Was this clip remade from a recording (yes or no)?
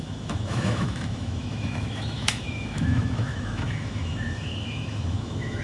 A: yes